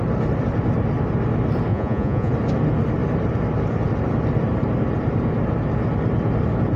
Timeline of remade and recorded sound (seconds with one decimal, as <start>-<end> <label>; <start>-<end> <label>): 0.0-1.7 recorded; 1.7-2.3 remade; 2.3-6.8 recorded